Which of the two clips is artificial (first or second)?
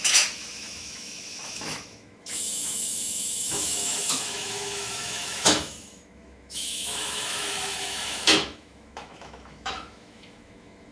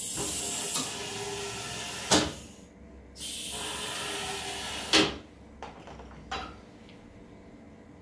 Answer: first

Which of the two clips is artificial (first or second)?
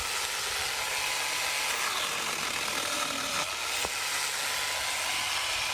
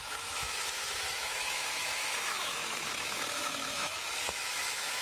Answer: second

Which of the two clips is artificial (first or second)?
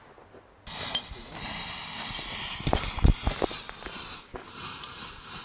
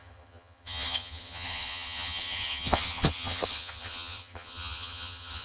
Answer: second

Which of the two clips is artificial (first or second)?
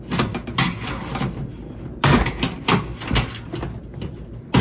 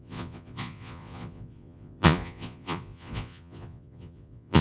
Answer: second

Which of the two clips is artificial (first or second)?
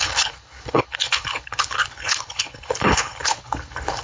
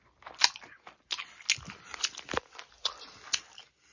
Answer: first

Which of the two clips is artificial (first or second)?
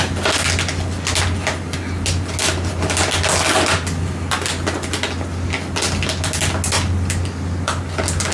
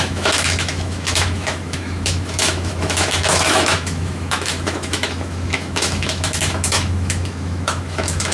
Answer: second